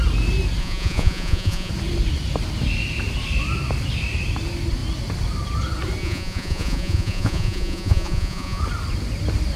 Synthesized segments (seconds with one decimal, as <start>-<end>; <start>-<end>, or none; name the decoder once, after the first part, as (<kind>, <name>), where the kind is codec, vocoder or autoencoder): 0.6-1.7 (vocoder, Vocos); 6.0-8.6